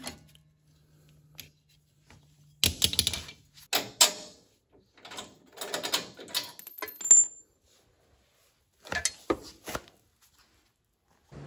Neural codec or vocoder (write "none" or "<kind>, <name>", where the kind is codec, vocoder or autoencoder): none